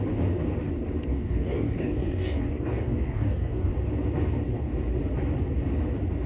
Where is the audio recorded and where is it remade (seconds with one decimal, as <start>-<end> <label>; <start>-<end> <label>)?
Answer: 0.0-1.1 recorded; 1.1-3.7 remade; 3.7-6.3 recorded